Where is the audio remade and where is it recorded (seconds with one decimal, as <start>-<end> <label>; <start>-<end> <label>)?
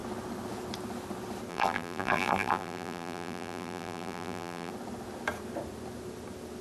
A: 0.0-1.5 recorded; 1.5-4.7 remade; 4.7-6.6 recorded